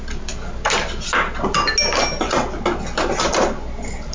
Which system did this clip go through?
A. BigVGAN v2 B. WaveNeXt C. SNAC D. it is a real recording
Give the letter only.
D